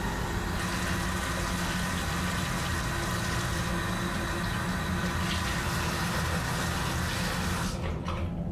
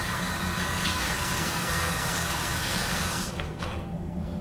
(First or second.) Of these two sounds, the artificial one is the second